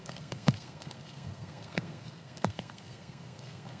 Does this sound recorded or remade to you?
remade